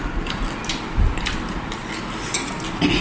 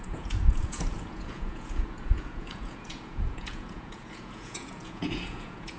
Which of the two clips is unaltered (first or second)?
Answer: first